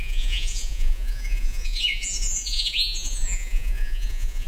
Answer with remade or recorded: remade